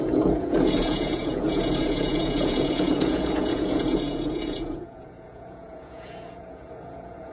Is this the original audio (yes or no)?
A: no